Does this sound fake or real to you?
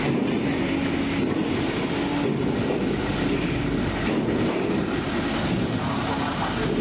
real